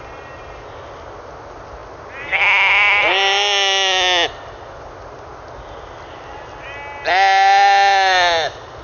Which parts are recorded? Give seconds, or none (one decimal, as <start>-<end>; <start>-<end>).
0.0-8.8